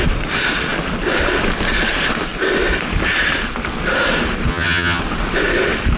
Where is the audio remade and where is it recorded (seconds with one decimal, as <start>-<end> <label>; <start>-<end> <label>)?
0.0-4.5 recorded; 4.5-5.0 remade; 5.0-6.0 recorded

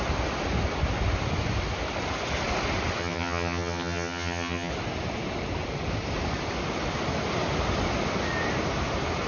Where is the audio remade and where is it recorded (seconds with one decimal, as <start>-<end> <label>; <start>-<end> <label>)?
0.0-3.0 recorded; 3.0-4.7 remade; 4.7-9.3 recorded